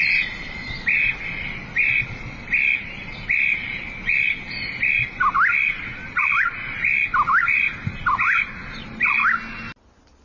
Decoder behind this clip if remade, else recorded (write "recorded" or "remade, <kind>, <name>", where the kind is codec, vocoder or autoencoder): recorded